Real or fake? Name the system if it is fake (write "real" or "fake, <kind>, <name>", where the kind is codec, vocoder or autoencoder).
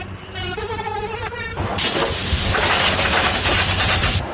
real